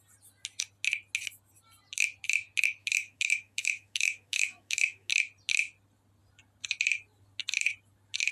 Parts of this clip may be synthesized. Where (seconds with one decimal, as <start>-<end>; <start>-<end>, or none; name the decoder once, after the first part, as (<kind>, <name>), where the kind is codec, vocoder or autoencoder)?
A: 2.8-5.1 (autoencoder, DAC-VAE)

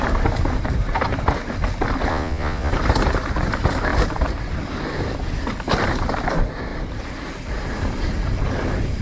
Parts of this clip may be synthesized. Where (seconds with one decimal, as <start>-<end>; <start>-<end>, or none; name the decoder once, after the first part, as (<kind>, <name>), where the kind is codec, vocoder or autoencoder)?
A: 2.1-2.7 (vocoder, Vocos)

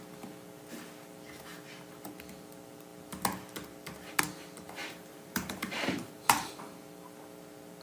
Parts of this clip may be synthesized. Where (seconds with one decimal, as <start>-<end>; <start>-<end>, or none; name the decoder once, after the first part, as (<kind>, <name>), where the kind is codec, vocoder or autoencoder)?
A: 4.8-6.5 (vocoder, BigVGAN v2)

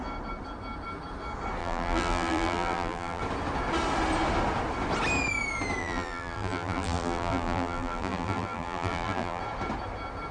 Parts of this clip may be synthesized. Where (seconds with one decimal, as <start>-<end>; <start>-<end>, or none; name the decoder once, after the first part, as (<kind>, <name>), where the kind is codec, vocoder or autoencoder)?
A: 1.6-3.2 (vocoder, BigVGAN v2); 5.8-9.4

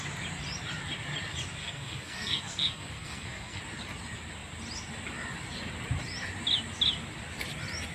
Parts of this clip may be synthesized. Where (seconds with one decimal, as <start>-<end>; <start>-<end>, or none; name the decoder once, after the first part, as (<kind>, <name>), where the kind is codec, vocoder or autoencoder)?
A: 1.6-3.6 (codec, SNAC)

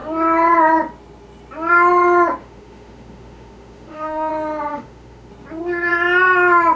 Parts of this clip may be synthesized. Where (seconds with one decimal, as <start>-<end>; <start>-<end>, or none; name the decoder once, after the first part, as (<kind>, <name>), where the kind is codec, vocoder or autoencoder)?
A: 2.4-4.3 (autoencoder, DAC-VAE); 4.7-5.3

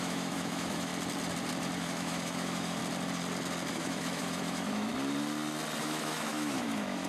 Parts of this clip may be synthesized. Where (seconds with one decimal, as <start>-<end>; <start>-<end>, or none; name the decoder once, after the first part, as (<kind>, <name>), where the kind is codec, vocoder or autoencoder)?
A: 0.0-0.9 (autoencoder, DAC-VAE); 1.8-2.8; 3.7-4.9; 5.8-7.1

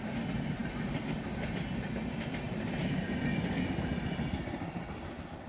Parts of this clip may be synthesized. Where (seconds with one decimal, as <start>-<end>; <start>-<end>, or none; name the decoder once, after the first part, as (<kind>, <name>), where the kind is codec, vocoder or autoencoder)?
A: none